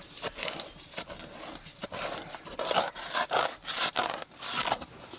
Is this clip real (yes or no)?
yes